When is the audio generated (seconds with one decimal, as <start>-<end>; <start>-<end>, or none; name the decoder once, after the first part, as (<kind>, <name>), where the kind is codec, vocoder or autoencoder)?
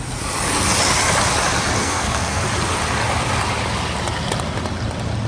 1.8-2.4 (codec, SNAC)